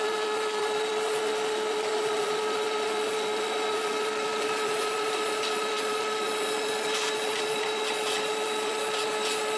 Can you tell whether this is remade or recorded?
remade